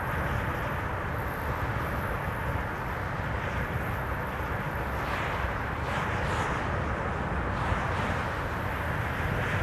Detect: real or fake real